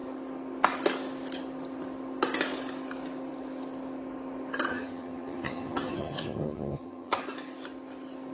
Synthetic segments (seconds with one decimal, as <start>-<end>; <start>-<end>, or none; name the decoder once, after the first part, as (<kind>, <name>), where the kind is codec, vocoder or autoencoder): 4.7-7.2 (vocoder, HiFi-GAN)

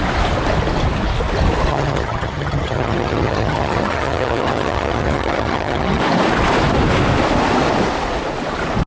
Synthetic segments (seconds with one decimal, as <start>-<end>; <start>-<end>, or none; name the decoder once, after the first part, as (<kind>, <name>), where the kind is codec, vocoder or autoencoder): 1.7-6.0 (vocoder, HiFi-GAN)

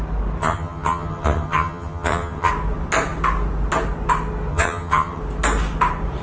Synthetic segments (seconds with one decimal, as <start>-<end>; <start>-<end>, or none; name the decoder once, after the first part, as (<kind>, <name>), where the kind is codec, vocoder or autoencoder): 0.4-2.5 (vocoder, HiFi-GAN); 4.5-5.2

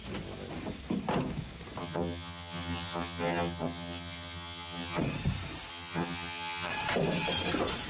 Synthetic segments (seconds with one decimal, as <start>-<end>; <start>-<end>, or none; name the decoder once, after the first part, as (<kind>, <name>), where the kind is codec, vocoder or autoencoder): 1.8-5.0 (vocoder, HiFi-GAN); 5.7-6.7

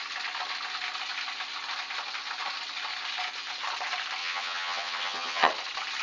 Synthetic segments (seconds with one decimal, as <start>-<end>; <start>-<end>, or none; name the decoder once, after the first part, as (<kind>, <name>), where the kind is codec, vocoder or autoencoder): 4.2-5.5 (vocoder, HiFi-GAN)

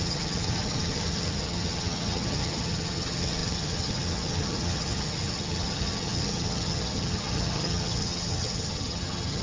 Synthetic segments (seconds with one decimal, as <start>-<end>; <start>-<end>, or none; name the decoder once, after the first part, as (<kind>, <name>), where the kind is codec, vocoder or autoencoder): 0.0-9.4 (vocoder, HiFi-GAN)

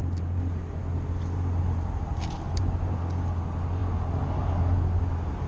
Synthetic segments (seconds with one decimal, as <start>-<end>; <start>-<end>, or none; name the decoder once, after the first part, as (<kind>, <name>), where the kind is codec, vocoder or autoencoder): none

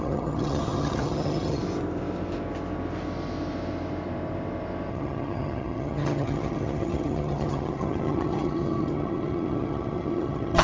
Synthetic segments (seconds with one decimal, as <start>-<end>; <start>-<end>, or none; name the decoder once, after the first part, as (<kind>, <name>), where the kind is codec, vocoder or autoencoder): 0.0-1.6 (vocoder, HiFi-GAN); 4.9-10.6